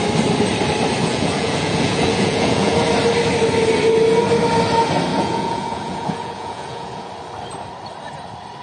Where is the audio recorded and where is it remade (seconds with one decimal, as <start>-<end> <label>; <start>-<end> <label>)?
0.0-1.0 recorded; 1.0-2.7 remade; 2.7-5.1 recorded; 5.1-7.1 remade; 7.1-8.6 recorded